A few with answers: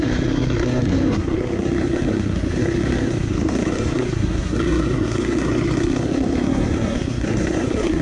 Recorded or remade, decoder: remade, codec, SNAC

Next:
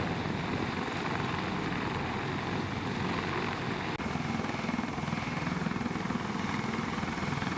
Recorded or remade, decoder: recorded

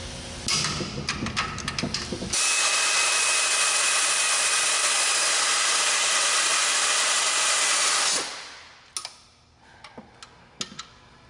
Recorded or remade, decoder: recorded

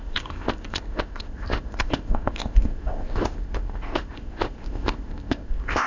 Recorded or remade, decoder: remade, codec, ZipCodec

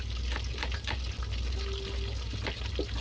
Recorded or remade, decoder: recorded